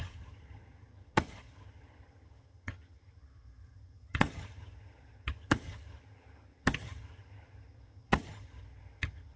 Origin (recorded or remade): remade